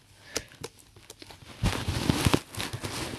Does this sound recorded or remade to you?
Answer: recorded